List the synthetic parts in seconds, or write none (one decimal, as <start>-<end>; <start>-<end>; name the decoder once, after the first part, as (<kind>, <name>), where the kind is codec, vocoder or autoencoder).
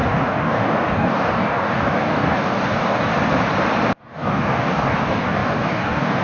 0.0-3.1 (codec, DAC); 4.0-6.2